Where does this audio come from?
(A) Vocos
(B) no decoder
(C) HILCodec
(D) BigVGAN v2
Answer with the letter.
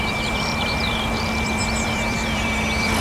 D